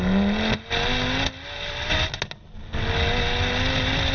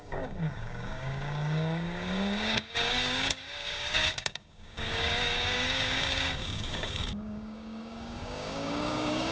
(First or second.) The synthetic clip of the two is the second